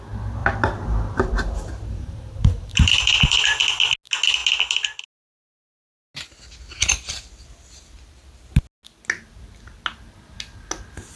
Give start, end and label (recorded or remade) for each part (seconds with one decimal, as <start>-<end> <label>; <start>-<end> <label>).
0.0-0.4 recorded; 0.4-3.6 remade; 3.6-11.2 recorded